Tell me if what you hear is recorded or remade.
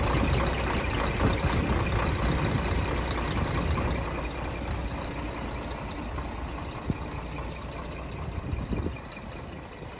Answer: recorded